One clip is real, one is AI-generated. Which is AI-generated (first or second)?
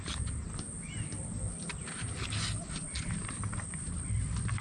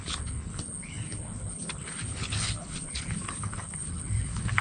second